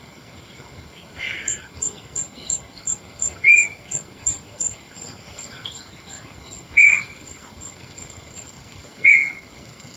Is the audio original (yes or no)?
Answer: no